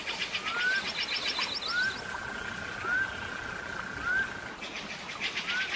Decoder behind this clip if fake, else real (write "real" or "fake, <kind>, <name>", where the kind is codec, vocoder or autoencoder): real